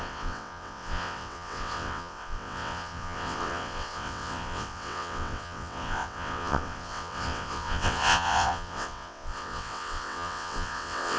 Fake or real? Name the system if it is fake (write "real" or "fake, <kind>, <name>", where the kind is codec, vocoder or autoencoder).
fake, vocoder, WaveNeXt